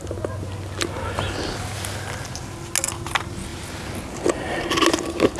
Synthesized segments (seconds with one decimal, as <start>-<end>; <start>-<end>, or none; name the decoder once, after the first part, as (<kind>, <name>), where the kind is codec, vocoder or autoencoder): none